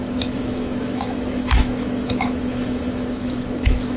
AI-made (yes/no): yes